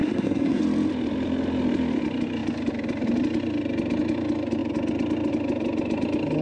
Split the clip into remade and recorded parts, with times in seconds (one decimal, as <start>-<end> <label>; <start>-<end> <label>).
0.0-0.6 remade; 0.6-6.4 recorded